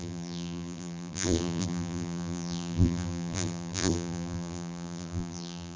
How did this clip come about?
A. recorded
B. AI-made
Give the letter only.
B